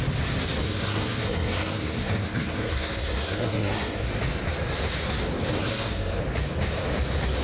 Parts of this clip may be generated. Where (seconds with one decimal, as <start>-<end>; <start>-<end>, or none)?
0.6-4.1; 5.6-6.2